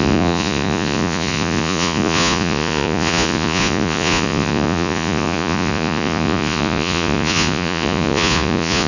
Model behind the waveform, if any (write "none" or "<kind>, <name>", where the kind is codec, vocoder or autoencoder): vocoder, Vocos